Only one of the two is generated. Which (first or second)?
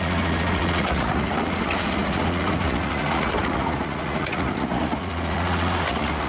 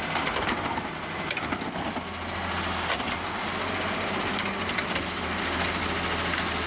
first